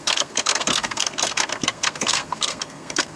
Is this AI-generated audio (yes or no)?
yes